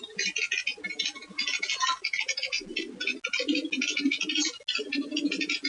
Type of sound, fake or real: real